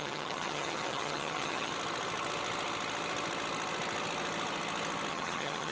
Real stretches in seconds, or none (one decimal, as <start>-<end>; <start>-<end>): 1.7-5.1